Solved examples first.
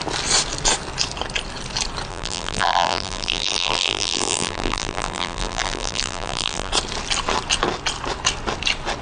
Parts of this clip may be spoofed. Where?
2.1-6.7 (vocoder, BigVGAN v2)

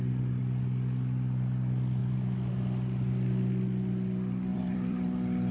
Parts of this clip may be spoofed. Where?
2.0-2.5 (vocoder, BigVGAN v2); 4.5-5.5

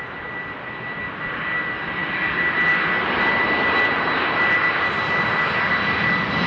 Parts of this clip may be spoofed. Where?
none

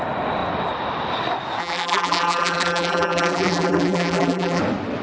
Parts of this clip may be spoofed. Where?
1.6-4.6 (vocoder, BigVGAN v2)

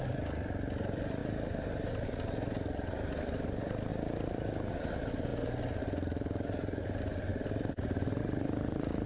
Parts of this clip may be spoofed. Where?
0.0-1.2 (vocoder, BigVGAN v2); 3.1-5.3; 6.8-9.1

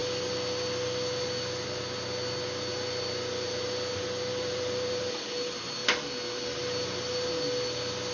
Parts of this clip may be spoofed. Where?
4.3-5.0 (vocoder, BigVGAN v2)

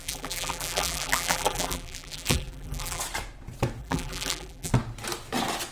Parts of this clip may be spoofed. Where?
0.0-3.0 (vocoder, BigVGAN v2); 3.8-4.7